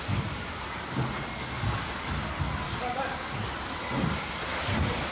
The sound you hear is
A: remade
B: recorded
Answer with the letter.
B